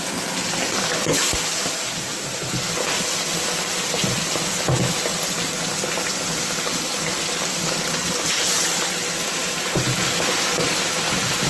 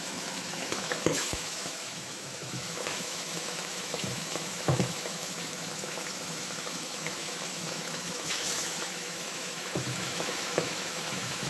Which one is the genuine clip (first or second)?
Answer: first